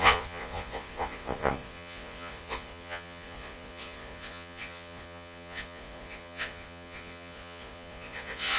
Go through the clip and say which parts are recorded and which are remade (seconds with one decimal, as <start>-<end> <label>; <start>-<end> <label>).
0.0-8.6 remade